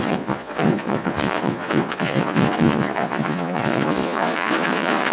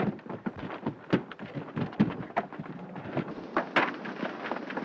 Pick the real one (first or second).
second